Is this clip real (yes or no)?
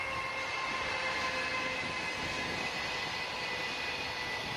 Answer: yes